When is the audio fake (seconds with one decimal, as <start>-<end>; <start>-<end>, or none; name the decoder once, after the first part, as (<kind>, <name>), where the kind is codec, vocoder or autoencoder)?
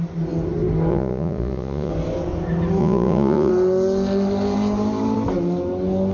0.9-1.9 (vocoder, Vocos); 2.8-3.5